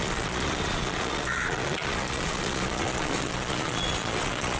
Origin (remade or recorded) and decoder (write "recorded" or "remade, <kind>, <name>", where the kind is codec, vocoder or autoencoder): remade, vocoder, Vocos